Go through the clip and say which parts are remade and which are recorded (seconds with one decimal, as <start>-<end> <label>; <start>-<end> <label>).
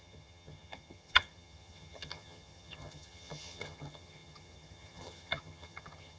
0.0-6.2 remade